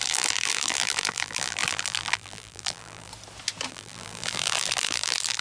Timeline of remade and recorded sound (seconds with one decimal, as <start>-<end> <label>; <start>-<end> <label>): 0.0-3.1 remade; 3.1-3.7 recorded; 3.7-5.4 remade